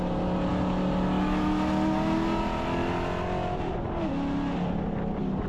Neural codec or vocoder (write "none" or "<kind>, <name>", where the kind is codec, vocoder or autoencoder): none